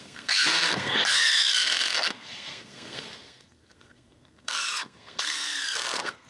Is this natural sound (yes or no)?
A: no